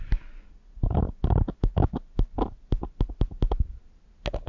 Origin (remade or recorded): recorded